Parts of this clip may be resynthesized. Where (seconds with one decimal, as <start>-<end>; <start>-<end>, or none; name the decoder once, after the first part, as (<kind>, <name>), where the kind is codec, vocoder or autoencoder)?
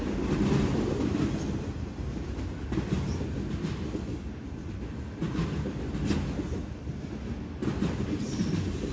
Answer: none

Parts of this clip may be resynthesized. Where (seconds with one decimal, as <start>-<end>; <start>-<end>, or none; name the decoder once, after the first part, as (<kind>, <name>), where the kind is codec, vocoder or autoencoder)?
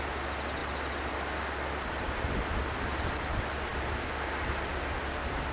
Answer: none